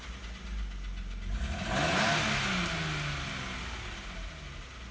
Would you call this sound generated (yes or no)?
no